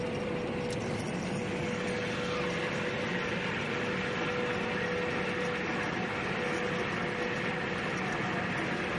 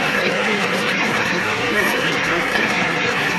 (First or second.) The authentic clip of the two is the first